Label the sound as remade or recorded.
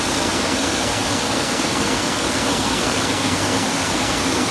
remade